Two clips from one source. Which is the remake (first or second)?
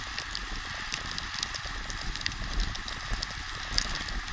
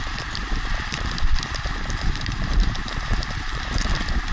second